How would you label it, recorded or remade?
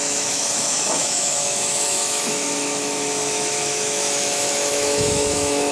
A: remade